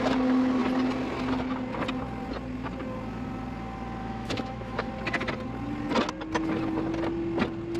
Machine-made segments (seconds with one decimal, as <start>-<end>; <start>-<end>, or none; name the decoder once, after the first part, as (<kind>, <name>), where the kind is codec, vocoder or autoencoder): 4.0-4.9 (autoencoder, DAC-VAE)